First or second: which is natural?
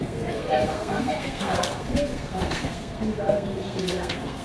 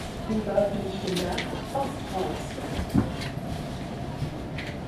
second